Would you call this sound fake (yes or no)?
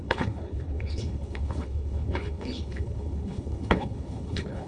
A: yes